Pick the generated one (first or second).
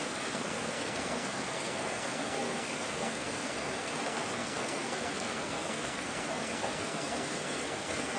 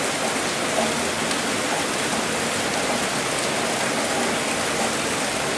first